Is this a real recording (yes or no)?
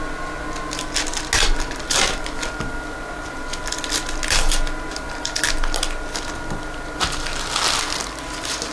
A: yes